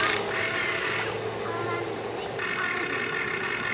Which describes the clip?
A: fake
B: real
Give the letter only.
B